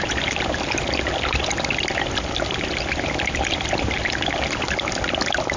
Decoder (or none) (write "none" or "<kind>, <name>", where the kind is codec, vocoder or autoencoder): none